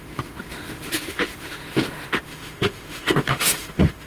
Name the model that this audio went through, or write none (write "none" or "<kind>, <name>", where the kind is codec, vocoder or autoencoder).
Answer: autoencoder, DAC-VAE